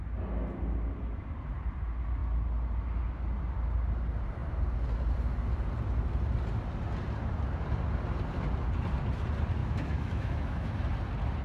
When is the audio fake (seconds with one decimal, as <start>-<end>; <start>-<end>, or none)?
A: 9.6-10.7